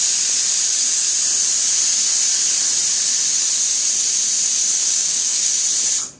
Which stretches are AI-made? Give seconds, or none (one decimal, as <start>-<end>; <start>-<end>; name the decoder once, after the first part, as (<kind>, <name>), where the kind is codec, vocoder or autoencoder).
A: 4.8-5.5 (codec, DAC)